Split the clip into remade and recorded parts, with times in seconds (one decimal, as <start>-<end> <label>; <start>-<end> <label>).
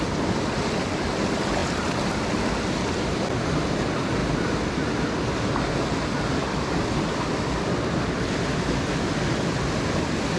0.0-10.4 recorded